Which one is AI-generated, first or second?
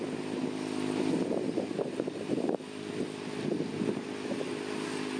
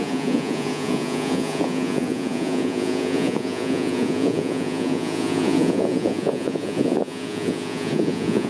second